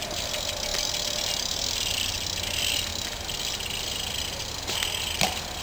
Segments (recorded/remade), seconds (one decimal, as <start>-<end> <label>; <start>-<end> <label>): 0.0-5.6 recorded